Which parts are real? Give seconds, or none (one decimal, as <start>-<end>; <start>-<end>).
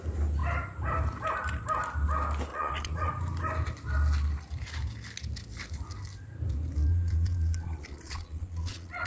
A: 0.0-2.5; 3.1-6.9